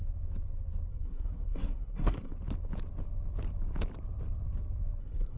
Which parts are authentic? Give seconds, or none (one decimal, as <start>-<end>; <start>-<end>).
0.0-0.9; 2.3-5.0